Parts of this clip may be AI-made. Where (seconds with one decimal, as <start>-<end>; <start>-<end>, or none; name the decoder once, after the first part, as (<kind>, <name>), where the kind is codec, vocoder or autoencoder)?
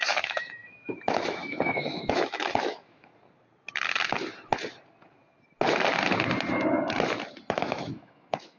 0.0-3.1 (autoencoder, DAC-VAE); 7.5-8.6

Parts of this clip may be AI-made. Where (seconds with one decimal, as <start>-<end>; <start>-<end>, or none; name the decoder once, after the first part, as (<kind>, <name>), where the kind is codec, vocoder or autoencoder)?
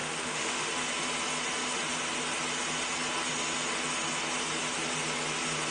0.0-0.7 (autoencoder, DAC-VAE)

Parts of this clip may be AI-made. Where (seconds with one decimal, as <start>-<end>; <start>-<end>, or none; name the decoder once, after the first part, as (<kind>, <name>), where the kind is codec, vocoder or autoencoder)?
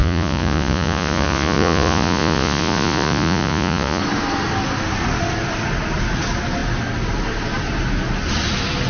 0.0-4.0 (vocoder, Vocos)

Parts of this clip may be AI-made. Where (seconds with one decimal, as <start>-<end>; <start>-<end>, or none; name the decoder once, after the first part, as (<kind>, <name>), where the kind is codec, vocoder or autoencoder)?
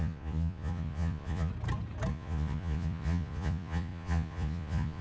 0.0-1.5 (vocoder, Vocos); 2.1-5.0